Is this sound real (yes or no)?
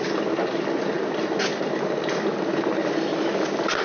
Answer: yes